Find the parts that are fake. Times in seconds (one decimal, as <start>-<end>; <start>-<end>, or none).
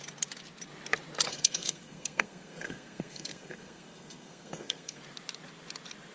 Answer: 1.3-5.0